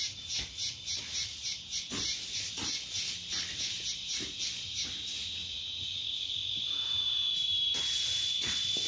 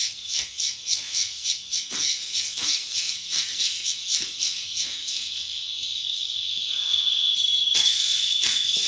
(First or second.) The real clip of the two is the first